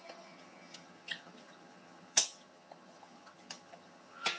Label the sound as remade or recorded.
remade